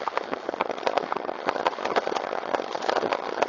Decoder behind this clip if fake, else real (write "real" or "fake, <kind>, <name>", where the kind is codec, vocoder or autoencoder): fake, vocoder, HiFi-GAN